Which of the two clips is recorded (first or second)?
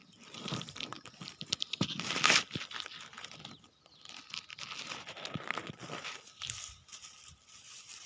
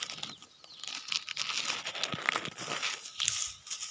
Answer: second